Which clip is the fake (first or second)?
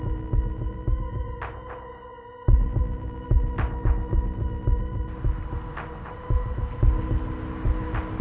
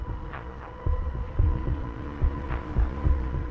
second